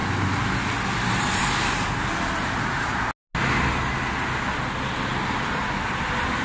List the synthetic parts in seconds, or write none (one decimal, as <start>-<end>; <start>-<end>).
none